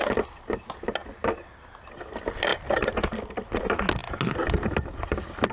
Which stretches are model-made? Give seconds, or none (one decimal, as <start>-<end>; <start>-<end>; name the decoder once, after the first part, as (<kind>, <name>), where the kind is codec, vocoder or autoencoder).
1.0-1.5 (vocoder, BigVGAN v2); 2.5-3.6